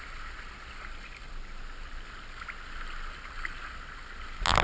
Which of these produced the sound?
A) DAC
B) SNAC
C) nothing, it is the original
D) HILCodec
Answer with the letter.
C